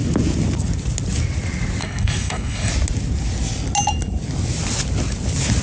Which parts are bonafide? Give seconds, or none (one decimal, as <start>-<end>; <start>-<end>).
0.0-1.8; 2.7-5.6